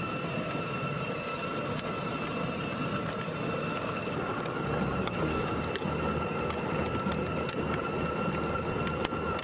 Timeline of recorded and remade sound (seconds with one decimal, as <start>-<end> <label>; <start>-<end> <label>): 0.0-3.7 recorded; 3.7-4.4 remade; 4.4-5.0 recorded; 5.0-5.6 remade; 5.6-9.4 recorded